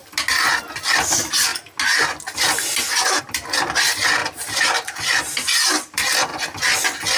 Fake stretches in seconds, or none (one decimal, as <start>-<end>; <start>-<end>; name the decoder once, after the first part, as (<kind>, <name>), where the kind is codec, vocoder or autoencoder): 0.6-1.5 (vocoder, BigVGAN v2); 3.2-6.3